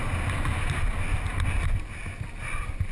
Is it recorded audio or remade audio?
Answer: recorded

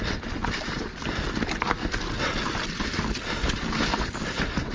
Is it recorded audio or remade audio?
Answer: recorded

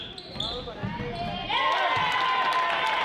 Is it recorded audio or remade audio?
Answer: recorded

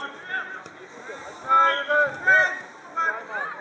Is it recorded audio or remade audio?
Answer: recorded